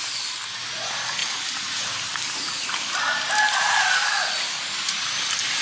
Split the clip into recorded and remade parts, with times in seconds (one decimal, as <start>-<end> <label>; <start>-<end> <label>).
0.0-5.6 recorded